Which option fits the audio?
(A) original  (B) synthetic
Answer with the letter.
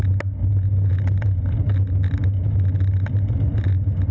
A